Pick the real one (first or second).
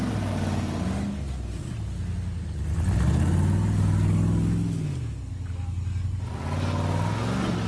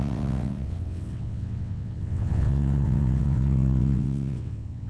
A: first